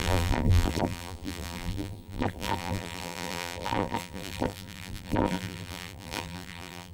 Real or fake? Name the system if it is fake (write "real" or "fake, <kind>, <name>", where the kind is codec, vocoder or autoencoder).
fake, vocoder, BigVGAN v2